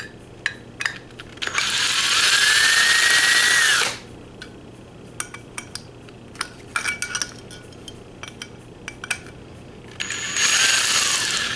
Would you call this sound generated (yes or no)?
no